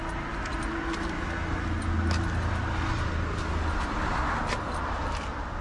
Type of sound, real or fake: real